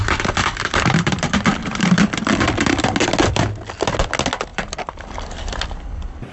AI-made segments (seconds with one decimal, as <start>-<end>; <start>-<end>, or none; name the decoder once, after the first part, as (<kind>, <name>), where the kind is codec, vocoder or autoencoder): 0.4-2.3 (vocoder, BigVGAN v2); 4.5-5.0